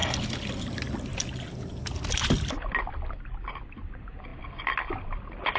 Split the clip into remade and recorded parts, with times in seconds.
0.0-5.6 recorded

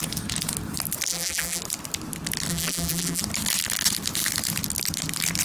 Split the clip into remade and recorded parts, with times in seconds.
0.0-1.1 recorded; 1.1-1.6 remade; 1.6-2.5 recorded; 2.5-3.2 remade; 3.2-5.4 recorded

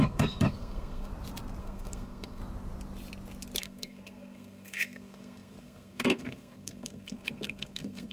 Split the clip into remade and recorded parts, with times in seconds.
0.0-1.1 remade; 1.1-1.6 recorded; 1.6-2.4 remade; 2.4-3.6 recorded; 3.6-8.1 remade

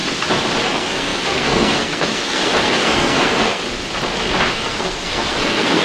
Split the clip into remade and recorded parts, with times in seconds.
0.0-0.6 recorded; 0.6-3.6 remade; 3.6-4.5 recorded; 4.5-5.8 remade